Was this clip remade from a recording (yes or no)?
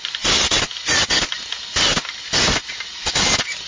no